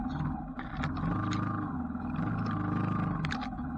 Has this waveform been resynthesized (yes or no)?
no